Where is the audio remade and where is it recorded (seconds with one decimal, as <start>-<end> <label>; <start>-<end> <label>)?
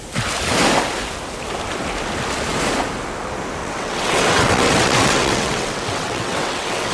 0.0-3.6 recorded; 3.6-6.9 remade